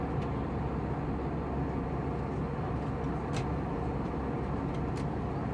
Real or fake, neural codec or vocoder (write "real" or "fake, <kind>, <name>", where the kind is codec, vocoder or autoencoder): real